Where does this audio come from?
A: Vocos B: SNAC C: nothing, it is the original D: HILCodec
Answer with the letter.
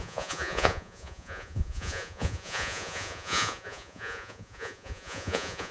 A